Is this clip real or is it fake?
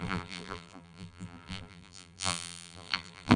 fake